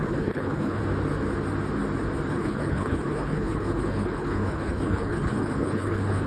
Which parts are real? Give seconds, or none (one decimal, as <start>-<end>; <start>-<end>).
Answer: 0.8-2.3